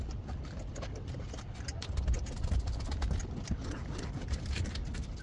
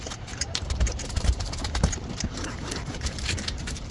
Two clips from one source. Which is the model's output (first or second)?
second